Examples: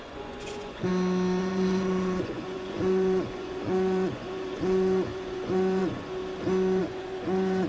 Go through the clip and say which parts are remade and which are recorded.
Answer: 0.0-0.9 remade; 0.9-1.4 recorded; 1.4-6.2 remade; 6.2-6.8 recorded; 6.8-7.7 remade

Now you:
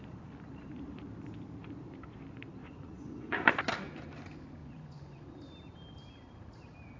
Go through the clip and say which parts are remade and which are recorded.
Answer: 0.0-2.6 recorded; 2.6-3.5 remade; 3.5-4.6 recorded; 4.6-5.2 remade; 5.2-7.0 recorded

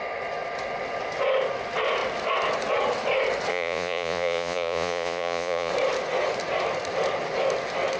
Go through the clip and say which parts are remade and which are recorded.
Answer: 0.0-3.5 recorded; 3.5-5.7 remade; 5.7-8.0 recorded

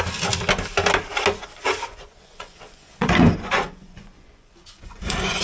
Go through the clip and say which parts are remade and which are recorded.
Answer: 0.0-1.9 recorded; 1.9-5.4 remade

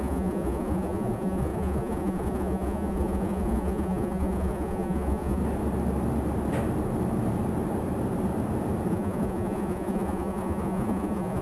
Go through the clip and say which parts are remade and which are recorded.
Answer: 0.0-5.4 remade; 5.4-8.9 recorded; 8.9-11.4 remade

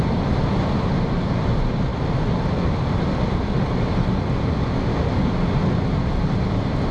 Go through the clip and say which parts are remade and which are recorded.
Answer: 0.0-6.9 recorded

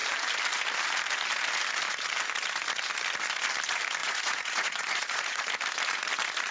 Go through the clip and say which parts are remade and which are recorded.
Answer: 0.0-4.0 recorded; 4.0-5.4 remade; 5.4-6.5 recorded